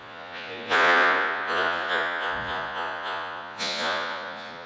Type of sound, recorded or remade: remade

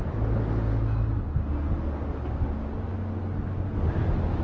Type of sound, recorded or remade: recorded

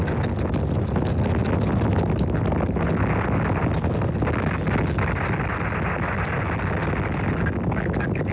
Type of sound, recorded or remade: recorded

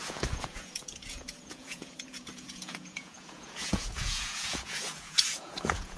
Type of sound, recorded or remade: remade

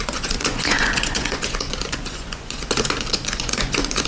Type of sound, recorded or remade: remade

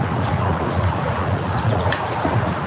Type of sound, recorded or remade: remade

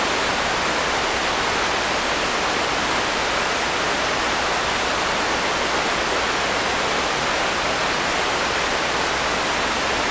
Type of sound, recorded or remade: recorded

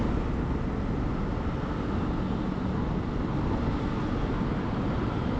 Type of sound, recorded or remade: recorded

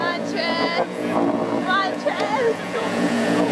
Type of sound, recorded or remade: remade